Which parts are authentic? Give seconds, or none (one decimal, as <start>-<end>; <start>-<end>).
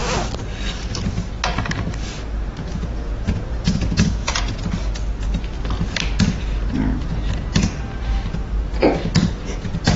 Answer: 0.0-2.6; 4.6-9.3